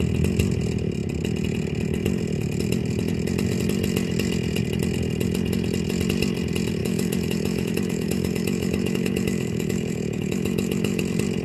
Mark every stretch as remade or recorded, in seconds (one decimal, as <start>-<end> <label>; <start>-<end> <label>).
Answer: 0.0-6.8 recorded; 6.8-11.0 remade; 11.0-11.4 recorded